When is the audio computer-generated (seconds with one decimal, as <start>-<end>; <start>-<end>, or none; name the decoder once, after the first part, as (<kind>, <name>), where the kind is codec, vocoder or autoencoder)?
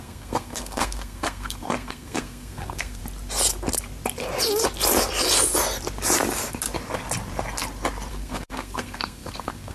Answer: 0.0-3.0 (codec, SNAC); 8.1-9.7